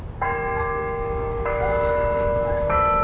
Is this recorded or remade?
remade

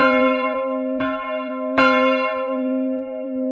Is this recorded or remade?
remade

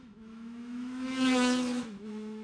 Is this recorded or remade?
remade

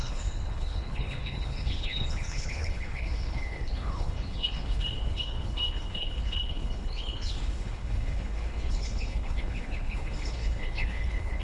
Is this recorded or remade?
remade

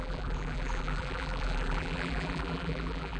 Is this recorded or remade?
remade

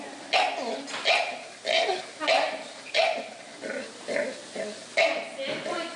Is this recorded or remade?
recorded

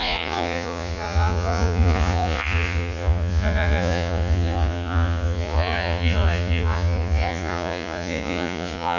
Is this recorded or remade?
remade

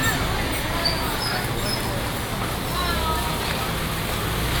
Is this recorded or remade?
recorded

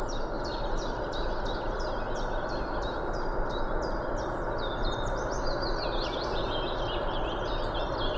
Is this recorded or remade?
recorded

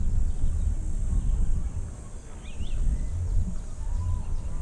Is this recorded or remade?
recorded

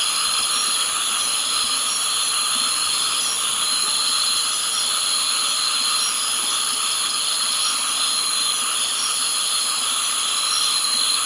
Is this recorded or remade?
recorded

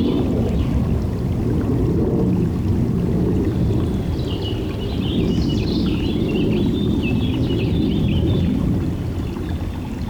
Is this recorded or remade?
recorded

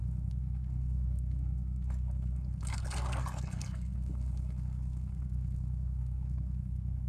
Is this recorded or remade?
remade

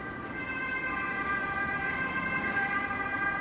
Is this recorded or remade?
recorded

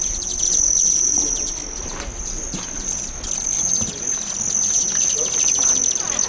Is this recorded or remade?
recorded